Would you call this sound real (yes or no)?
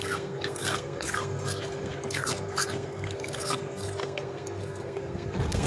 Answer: no